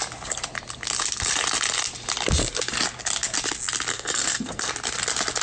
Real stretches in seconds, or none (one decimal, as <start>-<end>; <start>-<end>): 0.0-3.9; 4.7-5.4